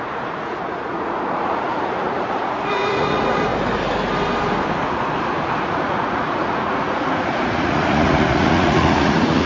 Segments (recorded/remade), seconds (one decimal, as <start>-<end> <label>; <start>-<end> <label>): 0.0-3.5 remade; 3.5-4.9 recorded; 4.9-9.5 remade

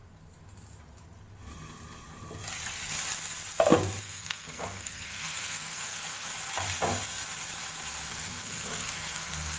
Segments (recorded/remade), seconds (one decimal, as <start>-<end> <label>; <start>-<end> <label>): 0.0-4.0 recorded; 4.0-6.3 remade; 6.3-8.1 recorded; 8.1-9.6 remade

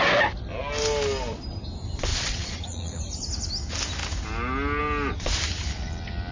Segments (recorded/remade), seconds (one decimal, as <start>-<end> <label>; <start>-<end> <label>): 0.0-2.1 recorded; 2.1-3.0 remade; 3.0-6.3 recorded